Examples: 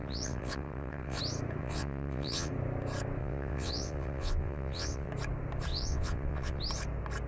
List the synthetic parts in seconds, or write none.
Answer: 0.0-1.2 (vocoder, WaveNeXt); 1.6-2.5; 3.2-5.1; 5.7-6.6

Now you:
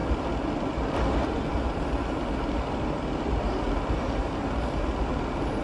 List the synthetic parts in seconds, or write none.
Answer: none

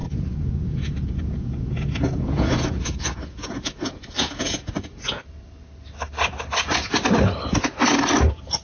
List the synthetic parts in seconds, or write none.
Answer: 0.0-5.2 (vocoder, Vocos)

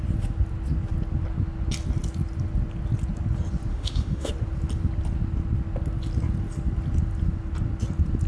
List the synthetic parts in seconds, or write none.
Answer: 3.7-4.3 (autoencoder, DAC-VAE)

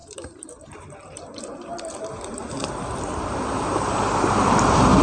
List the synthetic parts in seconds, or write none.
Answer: 0.0-5.0 (vocoder, BigVGAN v2)

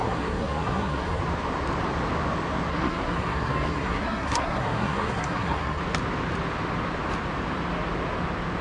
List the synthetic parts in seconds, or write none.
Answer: 0.0-1.2 (codec, SNAC); 2.7-5.8

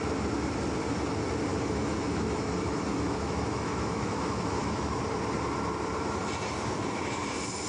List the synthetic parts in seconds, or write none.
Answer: 1.5-5.0 (autoencoder, DAC-VAE)

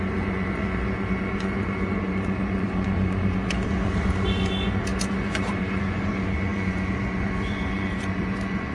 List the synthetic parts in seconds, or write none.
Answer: 0.0-8.7 (vocoder, Vocos)